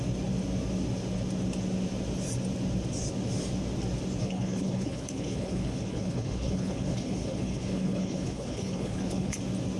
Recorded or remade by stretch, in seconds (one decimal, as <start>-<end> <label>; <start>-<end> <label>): 0.0-4.2 recorded; 4.2-9.4 remade; 9.4-9.8 recorded

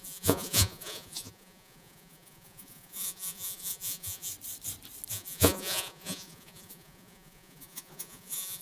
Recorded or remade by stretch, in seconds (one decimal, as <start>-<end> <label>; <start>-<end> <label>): 0.0-4.3 remade; 4.3-5.1 recorded; 5.1-8.6 remade

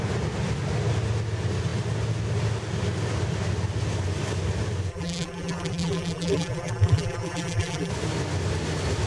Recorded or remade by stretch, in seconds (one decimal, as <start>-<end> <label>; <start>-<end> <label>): 0.0-4.9 recorded; 4.9-7.9 remade; 7.9-9.1 recorded